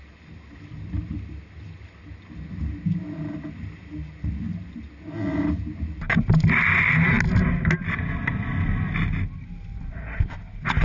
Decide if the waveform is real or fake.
real